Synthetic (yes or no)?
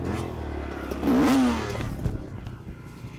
no